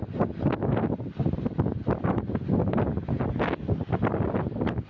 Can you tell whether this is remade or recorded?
recorded